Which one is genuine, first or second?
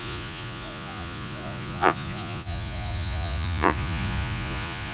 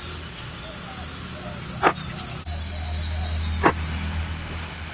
second